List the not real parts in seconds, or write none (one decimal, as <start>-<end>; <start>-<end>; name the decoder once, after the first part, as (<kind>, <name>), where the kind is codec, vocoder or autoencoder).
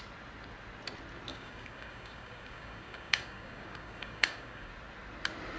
1.3-4.7 (codec, DAC)